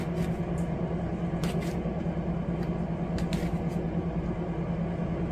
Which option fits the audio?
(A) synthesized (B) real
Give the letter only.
B